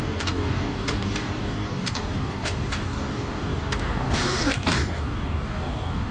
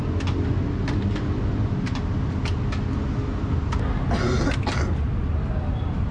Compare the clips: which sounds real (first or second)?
second